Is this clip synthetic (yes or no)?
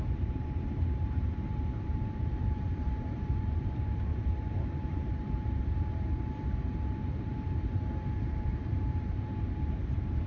yes